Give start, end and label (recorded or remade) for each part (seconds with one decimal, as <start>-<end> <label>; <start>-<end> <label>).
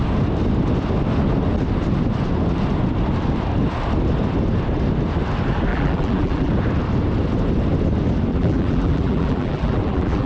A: 0.0-5.7 recorded; 5.7-6.5 remade; 6.5-8.3 recorded; 8.3-10.3 remade